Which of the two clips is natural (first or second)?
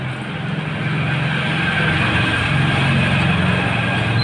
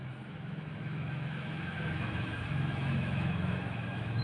first